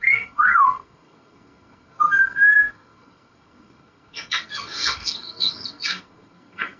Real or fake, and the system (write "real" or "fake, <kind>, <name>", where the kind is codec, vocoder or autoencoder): fake, codec, SNAC